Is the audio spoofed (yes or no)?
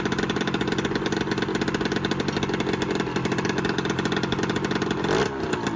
no